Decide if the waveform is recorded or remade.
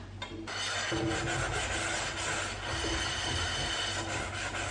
recorded